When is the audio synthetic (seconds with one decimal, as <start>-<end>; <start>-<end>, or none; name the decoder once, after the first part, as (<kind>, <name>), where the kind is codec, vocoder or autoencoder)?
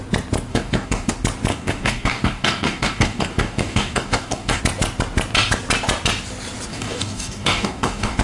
0.5-1.1 (codec, DAC); 1.5-4.6; 6.7-8.2